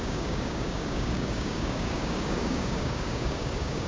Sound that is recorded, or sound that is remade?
remade